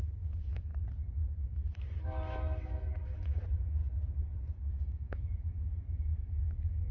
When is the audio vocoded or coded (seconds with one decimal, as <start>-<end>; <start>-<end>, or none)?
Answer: 0.0-0.7; 1.4-3.8; 4.7-6.9